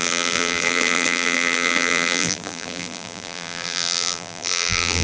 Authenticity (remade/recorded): remade